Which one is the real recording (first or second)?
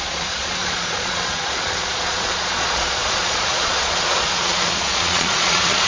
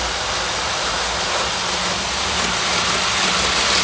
second